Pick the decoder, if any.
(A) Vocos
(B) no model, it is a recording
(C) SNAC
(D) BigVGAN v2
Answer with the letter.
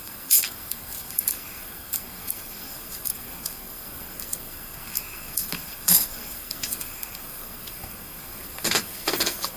C